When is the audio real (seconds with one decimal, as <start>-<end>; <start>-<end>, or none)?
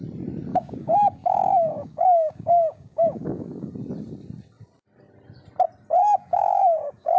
0.0-0.5; 3.7-6.0